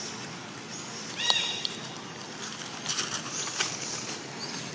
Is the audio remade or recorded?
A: recorded